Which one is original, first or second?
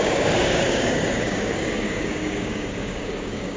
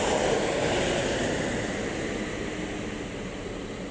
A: second